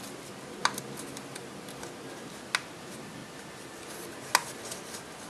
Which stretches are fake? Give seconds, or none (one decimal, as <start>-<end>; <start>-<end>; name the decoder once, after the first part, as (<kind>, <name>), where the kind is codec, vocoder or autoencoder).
none